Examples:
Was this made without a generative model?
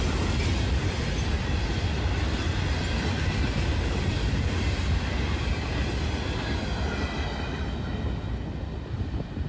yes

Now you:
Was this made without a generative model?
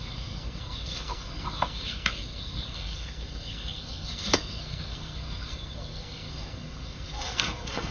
no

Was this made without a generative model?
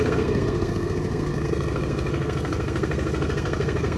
no